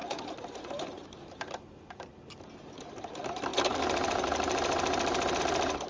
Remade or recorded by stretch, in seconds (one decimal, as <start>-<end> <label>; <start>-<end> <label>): 0.0-2.1 remade; 2.1-3.0 recorded; 3.0-5.9 remade